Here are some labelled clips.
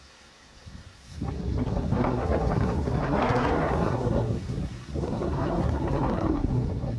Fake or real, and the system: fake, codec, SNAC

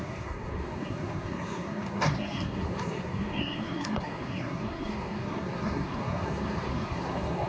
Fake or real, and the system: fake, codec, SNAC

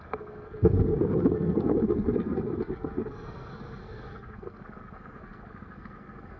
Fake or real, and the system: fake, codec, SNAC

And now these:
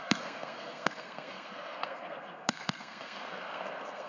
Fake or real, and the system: fake, codec, SNAC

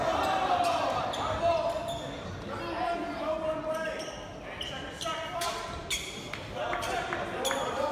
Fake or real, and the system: real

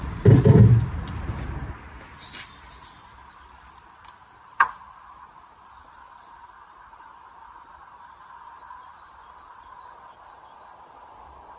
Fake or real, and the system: real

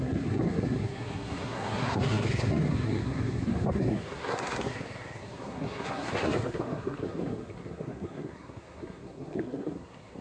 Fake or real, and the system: fake, codec, SNAC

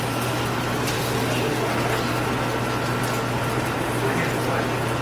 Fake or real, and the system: real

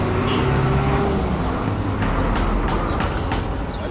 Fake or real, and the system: real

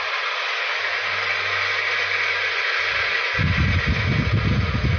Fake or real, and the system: real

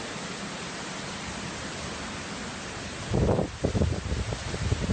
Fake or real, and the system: real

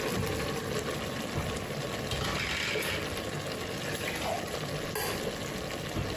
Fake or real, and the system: real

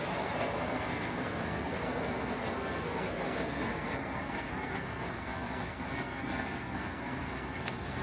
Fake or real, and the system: fake, codec, SNAC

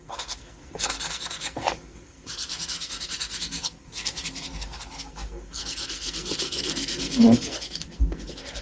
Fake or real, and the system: fake, codec, SNAC